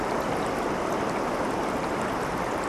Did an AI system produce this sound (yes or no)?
no